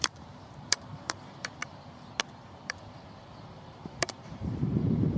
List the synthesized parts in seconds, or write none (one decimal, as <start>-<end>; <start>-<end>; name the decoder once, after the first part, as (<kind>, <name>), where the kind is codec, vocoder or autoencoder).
0.0-1.6 (vocoder, BigVGAN v2); 2.5-3.3; 4.0-5.2